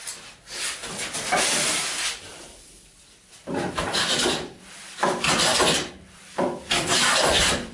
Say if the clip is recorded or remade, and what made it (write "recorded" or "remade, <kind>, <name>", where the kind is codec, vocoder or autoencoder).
remade, vocoder, BigVGAN v2